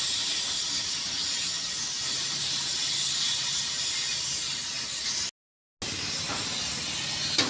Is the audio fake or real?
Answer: real